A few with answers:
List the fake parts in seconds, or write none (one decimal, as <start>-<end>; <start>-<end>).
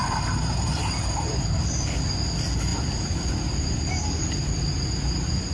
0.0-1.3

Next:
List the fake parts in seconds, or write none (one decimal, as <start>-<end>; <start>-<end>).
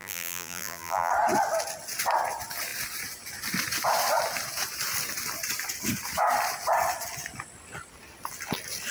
0.0-1.1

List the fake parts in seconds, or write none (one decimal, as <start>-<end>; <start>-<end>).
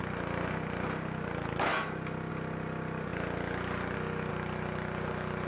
none